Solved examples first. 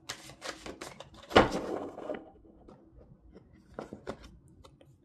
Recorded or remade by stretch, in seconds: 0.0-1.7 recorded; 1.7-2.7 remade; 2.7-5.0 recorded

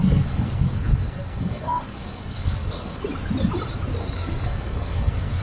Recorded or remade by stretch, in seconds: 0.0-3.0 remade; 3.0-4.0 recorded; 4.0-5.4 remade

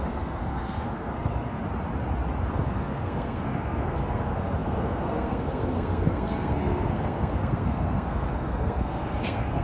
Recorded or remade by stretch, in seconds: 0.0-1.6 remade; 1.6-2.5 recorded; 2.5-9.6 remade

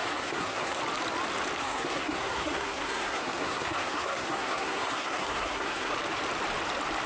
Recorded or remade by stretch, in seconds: 0.0-0.8 remade; 0.8-1.6 recorded; 1.6-5.9 remade; 5.9-7.1 recorded

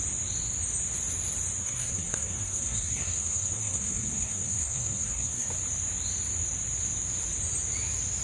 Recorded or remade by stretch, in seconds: 0.0-1.6 recorded; 1.6-5.5 remade; 5.5-8.2 recorded